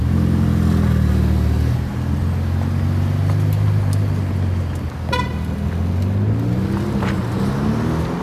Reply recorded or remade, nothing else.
recorded